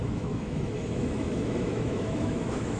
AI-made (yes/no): yes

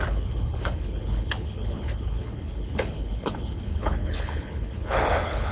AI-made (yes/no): yes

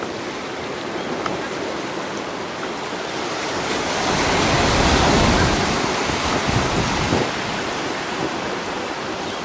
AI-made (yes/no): no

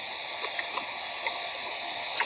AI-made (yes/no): no